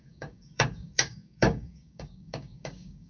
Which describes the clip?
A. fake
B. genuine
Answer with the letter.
A